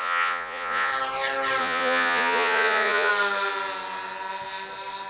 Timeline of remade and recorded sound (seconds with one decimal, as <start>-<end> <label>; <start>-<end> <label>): 0.0-0.9 remade; 0.9-1.6 recorded; 1.6-3.1 remade; 3.1-5.1 recorded